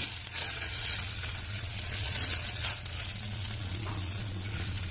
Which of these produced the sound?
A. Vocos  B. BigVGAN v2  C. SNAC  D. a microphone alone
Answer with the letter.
A